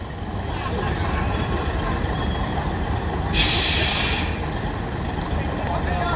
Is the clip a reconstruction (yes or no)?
no